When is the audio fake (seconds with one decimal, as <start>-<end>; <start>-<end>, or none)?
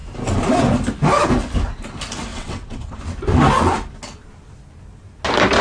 2.3-3.0